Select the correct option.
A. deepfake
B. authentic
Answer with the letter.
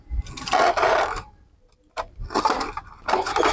B